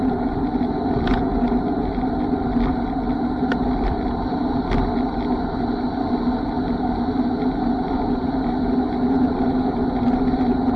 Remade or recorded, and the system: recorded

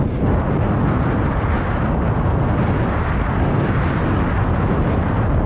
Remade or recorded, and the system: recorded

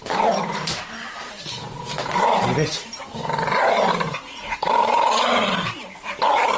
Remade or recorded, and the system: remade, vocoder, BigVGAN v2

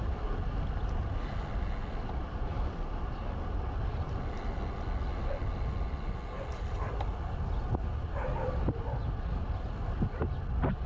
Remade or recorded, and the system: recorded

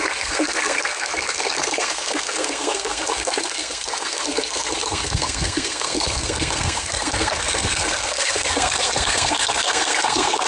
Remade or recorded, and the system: remade, codec, SNAC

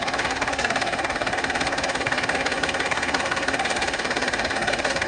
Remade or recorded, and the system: remade, codec, SNAC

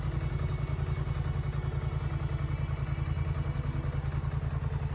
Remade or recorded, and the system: recorded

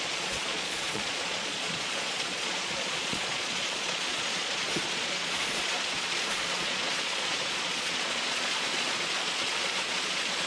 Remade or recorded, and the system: remade, vocoder, Vocos